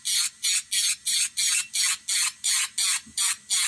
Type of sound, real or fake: real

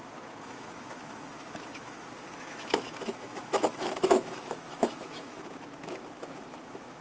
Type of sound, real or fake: fake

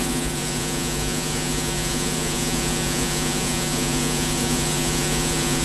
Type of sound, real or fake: fake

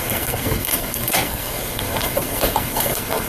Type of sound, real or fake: fake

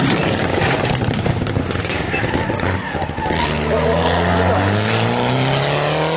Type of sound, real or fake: real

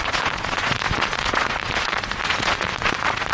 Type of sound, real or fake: fake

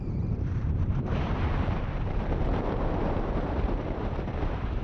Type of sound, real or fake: fake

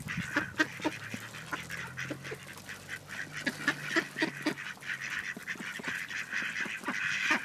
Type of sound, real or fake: real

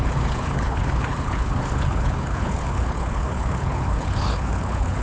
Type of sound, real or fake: fake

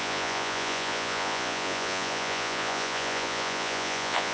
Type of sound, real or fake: fake